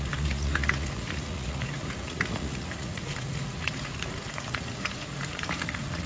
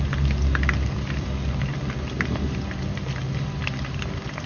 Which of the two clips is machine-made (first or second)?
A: first